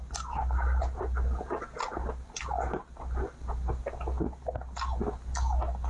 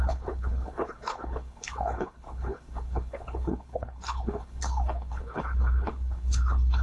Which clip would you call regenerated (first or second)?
second